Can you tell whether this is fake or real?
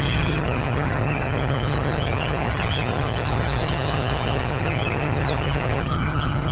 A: fake